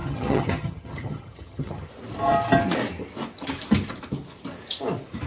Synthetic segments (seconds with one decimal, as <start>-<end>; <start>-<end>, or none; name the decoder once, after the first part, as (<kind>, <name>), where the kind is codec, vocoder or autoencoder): 0.0-1.9 (vocoder, HiFi-GAN)